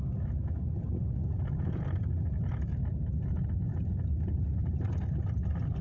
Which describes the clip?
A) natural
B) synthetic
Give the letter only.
A